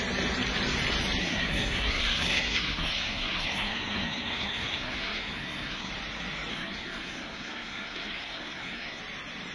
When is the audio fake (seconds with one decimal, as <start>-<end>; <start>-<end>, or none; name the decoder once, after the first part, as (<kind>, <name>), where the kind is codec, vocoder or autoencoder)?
1.2-5.9 (codec, SNAC); 6.5-9.0